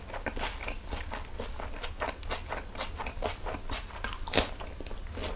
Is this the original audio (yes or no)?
yes